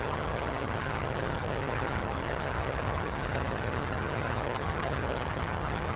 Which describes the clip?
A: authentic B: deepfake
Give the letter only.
B